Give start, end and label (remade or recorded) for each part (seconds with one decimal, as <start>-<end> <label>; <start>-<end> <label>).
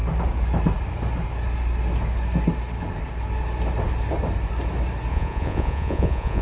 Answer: 0.0-5.1 recorded; 5.1-6.4 remade